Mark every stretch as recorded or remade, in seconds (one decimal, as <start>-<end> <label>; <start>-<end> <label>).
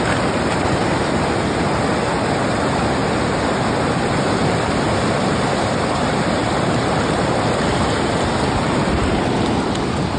0.0-10.2 recorded